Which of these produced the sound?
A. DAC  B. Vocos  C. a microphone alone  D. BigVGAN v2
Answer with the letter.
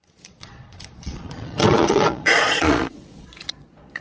B